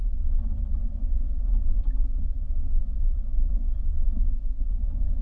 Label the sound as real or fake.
fake